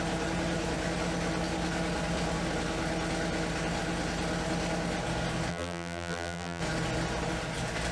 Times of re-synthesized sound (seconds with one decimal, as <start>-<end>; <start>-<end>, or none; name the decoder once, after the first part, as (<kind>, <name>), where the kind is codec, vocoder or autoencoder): 5.5-6.6 (vocoder, BigVGAN v2)